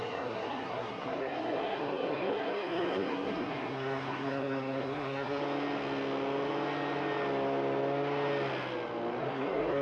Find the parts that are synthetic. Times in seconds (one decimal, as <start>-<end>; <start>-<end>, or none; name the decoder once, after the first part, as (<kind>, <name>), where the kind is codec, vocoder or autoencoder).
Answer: 0.0-5.4 (codec, SNAC); 9.2-9.8